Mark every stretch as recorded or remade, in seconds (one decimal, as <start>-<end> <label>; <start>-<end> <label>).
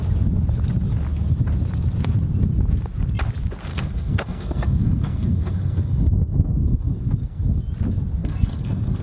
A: 0.0-3.7 recorded; 3.7-7.6 remade; 7.6-8.2 recorded; 8.2-9.0 remade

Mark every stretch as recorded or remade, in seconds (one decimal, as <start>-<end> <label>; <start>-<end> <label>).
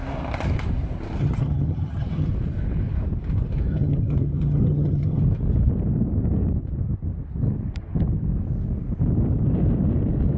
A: 0.0-1.2 recorded; 1.2-2.3 remade; 2.3-3.7 recorded; 3.7-5.2 remade; 5.2-10.4 recorded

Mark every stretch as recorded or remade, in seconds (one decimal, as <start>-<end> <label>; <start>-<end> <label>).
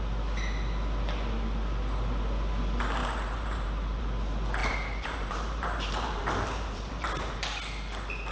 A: 0.0-3.0 recorded; 3.0-4.0 remade; 4.0-4.6 recorded; 4.6-7.1 remade; 7.1-8.3 recorded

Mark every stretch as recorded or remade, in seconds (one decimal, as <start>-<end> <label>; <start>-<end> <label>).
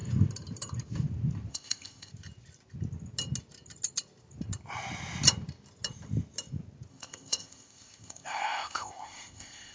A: 0.0-1.5 recorded; 1.5-2.1 remade; 2.1-6.9 recorded; 6.9-9.7 remade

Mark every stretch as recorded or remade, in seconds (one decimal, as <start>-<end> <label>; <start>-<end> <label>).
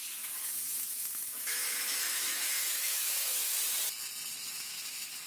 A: 0.0-3.5 remade; 3.5-4.3 recorded; 4.3-5.3 remade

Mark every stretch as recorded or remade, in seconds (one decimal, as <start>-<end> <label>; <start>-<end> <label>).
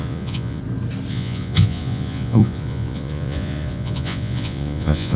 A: 0.0-0.6 remade; 0.6-1.1 recorded; 1.1-5.2 remade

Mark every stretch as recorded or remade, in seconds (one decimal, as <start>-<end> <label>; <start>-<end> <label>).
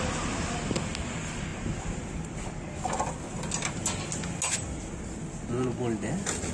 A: 0.0-6.5 recorded